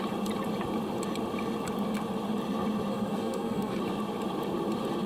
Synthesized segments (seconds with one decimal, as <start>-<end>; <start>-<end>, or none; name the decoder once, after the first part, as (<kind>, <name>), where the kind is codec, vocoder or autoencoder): 2.9-3.8 (codec, SNAC)